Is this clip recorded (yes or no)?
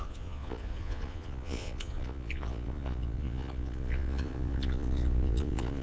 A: no